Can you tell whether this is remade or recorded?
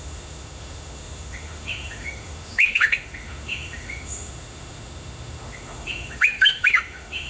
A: remade